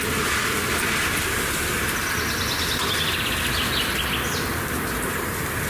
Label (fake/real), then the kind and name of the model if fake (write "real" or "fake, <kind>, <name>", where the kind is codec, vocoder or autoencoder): real